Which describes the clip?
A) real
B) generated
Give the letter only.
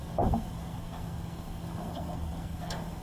B